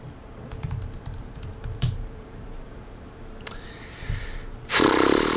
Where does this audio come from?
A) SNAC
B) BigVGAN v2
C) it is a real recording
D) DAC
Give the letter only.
B